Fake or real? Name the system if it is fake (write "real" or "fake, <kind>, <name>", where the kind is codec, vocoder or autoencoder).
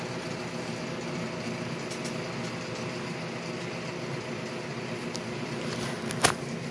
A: real